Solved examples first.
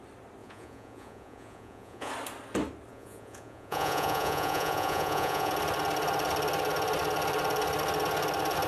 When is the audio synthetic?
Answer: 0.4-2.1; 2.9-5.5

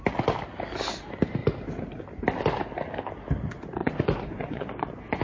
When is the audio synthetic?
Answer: 3.8-5.2

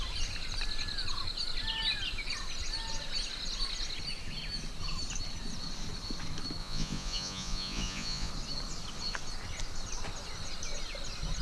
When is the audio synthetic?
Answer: 6.6-8.3

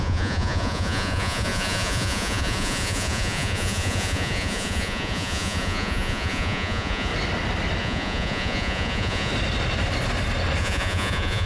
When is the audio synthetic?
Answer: 0.0-7.1; 7.8-9.3; 10.6-11.5